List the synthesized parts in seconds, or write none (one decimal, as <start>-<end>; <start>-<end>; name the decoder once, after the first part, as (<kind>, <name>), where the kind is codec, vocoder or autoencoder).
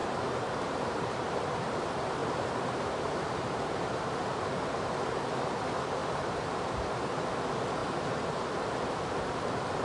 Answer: 0.0-1.7 (vocoder, BigVGAN v2); 2.2-5.6; 6.0-7.0; 7.8-9.4